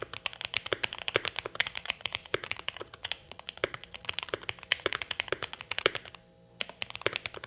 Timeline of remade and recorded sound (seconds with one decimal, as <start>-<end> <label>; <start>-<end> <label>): 0.0-1.6 recorded; 1.6-4.3 remade; 4.3-4.7 recorded; 4.7-5.9 remade; 5.9-7.5 recorded